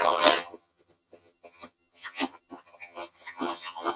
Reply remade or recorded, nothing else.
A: remade